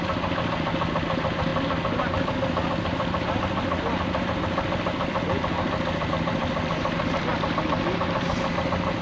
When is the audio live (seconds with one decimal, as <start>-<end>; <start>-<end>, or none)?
1.5-6.1; 7.3-8.5